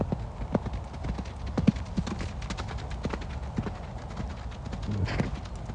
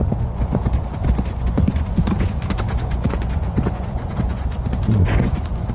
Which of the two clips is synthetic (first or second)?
second